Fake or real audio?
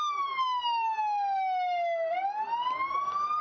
real